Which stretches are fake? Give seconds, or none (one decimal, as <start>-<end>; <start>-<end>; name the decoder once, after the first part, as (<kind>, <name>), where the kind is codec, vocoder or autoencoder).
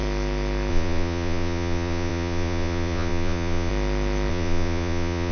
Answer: 0.7-3.7 (vocoder, Vocos); 4.3-5.3